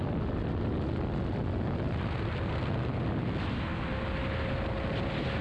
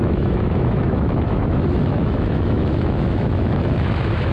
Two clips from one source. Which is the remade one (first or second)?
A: second